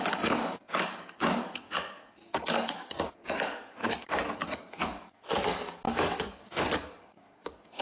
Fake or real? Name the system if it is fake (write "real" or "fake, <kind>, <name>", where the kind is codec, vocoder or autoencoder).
fake, codec, DAC